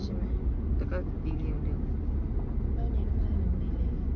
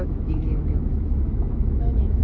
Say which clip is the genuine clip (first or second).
first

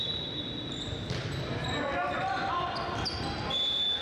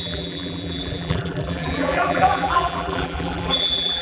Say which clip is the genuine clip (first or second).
first